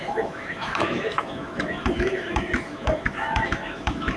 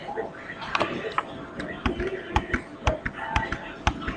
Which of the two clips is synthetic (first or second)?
first